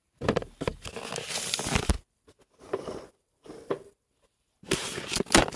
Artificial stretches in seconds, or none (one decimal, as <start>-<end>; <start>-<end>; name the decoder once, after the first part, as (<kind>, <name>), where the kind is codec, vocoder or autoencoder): none